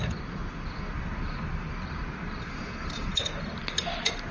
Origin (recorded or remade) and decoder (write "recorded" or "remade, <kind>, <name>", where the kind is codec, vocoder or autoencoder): recorded